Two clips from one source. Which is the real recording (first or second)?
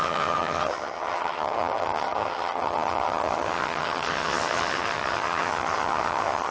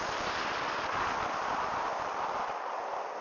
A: second